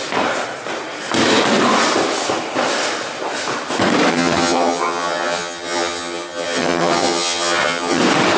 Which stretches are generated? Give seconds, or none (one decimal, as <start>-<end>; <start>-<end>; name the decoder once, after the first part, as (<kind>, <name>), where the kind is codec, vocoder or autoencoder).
4.1-8.0 (vocoder, HiFi-GAN)